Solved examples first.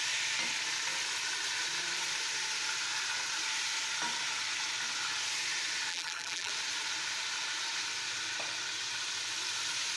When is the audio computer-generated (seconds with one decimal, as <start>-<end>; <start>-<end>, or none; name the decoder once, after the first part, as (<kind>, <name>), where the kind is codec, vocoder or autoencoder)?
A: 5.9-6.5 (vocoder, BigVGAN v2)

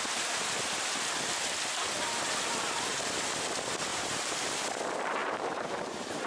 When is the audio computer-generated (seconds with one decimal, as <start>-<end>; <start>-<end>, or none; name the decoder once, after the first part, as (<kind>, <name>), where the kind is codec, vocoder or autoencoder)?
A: 3.9-4.4 (vocoder, BigVGAN v2); 5.2-6.3

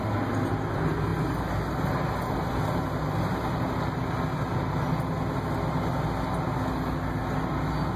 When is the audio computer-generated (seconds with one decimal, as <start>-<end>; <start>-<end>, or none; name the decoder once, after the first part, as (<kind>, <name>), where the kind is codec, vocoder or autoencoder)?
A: none

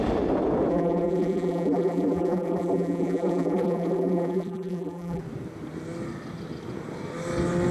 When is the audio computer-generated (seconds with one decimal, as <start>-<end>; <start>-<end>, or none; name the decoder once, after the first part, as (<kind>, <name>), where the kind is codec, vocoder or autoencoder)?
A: 0.7-5.2 (vocoder, BigVGAN v2)